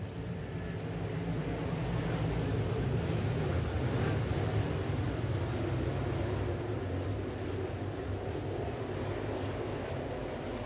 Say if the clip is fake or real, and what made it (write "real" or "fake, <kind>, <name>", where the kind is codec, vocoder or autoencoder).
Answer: real